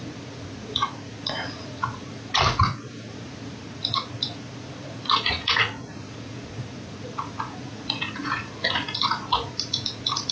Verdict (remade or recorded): remade